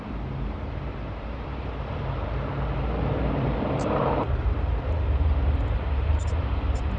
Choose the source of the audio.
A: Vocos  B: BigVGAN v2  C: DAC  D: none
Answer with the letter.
B